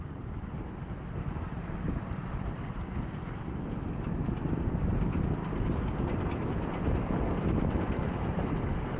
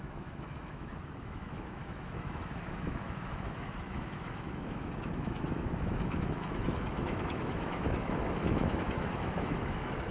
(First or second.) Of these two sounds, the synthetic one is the second